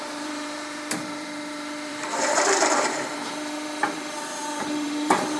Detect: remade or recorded remade